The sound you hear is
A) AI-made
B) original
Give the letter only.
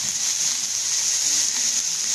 B